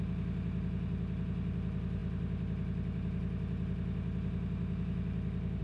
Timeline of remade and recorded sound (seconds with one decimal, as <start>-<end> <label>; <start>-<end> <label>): 0.0-5.6 recorded